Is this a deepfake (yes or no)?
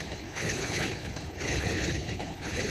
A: yes